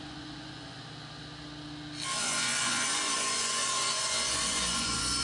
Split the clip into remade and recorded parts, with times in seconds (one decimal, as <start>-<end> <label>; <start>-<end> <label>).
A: 0.0-0.8 remade; 0.8-2.2 recorded; 2.2-5.2 remade